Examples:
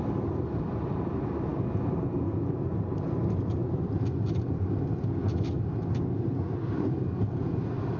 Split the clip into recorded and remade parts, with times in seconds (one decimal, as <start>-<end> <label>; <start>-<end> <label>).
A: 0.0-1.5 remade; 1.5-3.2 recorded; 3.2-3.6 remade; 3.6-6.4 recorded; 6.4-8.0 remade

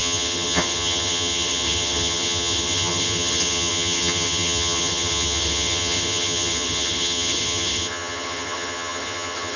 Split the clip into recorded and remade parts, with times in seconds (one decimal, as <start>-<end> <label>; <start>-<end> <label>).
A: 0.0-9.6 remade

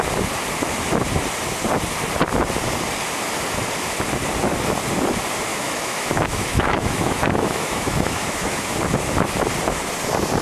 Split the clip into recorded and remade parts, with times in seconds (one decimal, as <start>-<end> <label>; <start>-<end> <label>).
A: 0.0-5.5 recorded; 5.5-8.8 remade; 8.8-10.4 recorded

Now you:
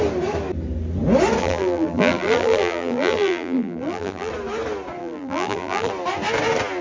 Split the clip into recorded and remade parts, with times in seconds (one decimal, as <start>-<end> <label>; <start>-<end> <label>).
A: 0.0-1.4 recorded; 1.4-4.3 remade; 4.3-5.0 recorded; 5.0-5.9 remade; 5.9-6.8 recorded

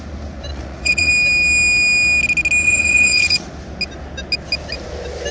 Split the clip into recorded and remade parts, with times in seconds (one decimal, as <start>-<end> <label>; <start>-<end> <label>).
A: 0.0-0.5 recorded; 0.5-1.1 remade; 1.1-2.6 recorded; 2.6-3.5 remade; 3.5-5.3 recorded

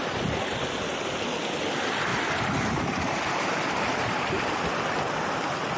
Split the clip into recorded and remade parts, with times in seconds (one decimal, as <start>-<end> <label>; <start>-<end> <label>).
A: 0.0-5.8 recorded

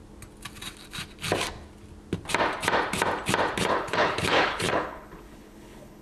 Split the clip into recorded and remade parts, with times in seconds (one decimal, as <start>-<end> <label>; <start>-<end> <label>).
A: 0.0-3.6 recorded; 3.6-6.0 remade